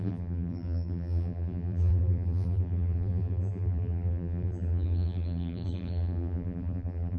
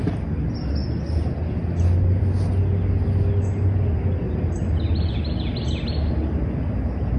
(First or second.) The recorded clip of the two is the second